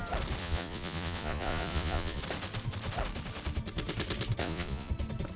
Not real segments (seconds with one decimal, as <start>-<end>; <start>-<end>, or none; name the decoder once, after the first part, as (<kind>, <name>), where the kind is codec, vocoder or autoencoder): 0.4-2.2 (vocoder, Vocos); 4.4-4.9